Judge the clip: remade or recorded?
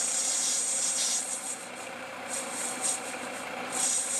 remade